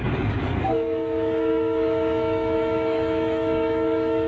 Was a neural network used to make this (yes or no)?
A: yes